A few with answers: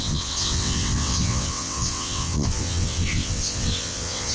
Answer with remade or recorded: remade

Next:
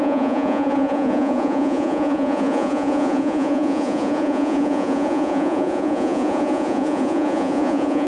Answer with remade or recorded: remade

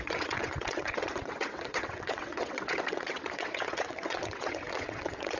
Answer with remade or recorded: remade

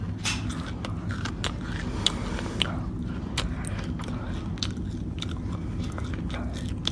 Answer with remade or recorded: recorded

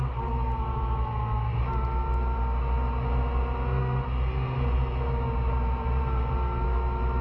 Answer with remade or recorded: recorded